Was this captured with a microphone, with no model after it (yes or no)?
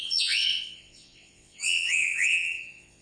no